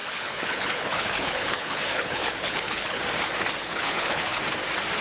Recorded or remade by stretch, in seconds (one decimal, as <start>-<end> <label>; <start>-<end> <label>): 0.0-3.0 remade; 3.0-3.6 recorded; 3.6-4.4 remade; 4.4-5.0 recorded